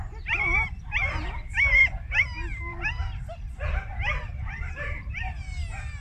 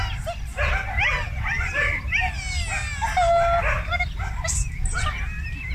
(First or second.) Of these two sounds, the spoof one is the first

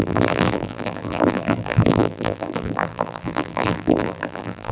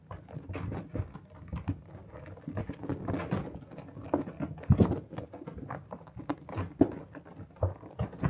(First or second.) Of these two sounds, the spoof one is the first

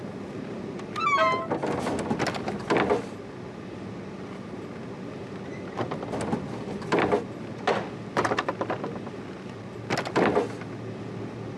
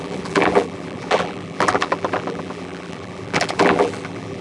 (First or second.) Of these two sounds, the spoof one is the second